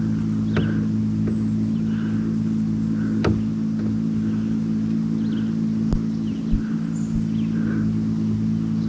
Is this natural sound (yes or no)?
yes